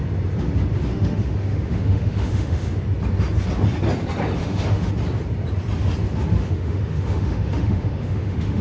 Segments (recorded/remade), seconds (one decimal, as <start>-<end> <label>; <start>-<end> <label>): 0.0-0.9 recorded; 0.9-2.8 remade; 2.8-4.4 recorded; 4.4-4.9 remade; 4.9-6.4 recorded; 6.4-8.6 remade